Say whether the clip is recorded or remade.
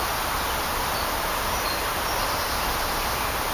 recorded